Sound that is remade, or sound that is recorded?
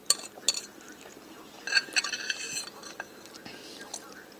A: recorded